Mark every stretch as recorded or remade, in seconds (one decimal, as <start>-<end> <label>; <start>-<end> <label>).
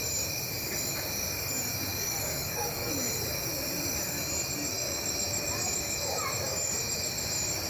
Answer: 0.0-1.9 recorded; 1.9-2.9 remade; 2.9-7.7 recorded